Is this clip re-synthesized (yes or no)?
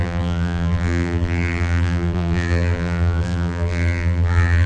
yes